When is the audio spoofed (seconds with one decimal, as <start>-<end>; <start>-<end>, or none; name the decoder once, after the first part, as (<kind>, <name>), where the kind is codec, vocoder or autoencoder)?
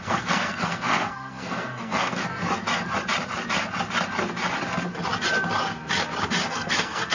0.0-2.2 (codec, SNAC); 6.5-7.1